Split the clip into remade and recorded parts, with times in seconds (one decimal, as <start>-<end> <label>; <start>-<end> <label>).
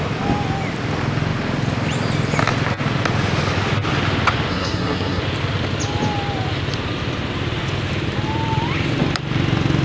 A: 0.0-4.5 recorded; 4.5-5.2 remade; 5.2-9.8 recorded